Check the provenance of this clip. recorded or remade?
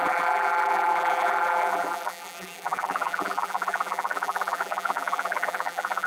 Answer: remade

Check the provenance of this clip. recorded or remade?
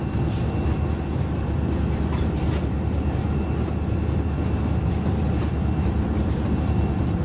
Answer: recorded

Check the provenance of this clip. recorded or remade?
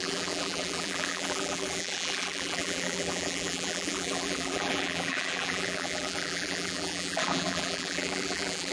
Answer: remade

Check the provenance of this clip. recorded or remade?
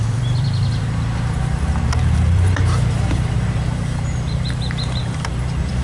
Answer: remade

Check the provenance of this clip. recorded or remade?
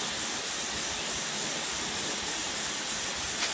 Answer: recorded